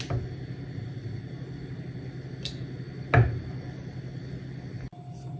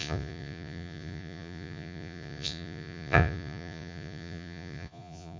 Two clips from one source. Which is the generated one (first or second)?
second